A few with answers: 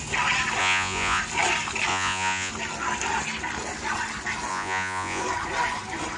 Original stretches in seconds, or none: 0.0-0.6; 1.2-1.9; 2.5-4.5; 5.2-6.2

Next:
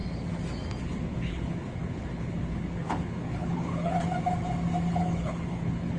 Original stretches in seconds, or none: 0.0-0.8; 4.0-4.9

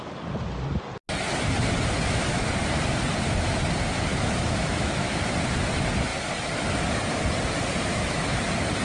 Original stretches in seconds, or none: 0.0-4.1; 5.2-7.9; 8.4-8.8

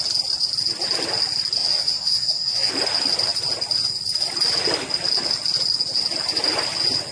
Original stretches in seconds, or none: 0.0-1.6; 2.7-7.1

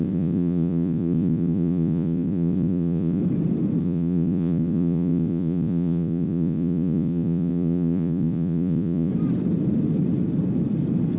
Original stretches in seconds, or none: 3.2-3.8; 9.1-11.2

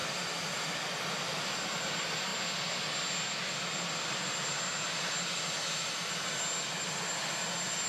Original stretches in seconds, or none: 1.5-7.9

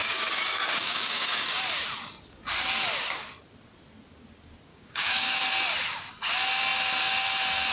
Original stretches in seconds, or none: 1.6-4.7; 5.4-7.7

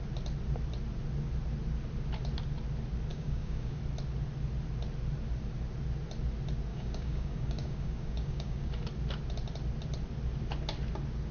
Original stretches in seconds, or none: 0.0-3.1; 3.8-6.7; 8.7-11.3